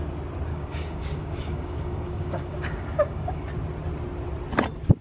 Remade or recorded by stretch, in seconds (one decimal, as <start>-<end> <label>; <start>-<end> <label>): 0.0-0.5 recorded; 0.5-3.5 remade; 3.5-5.0 recorded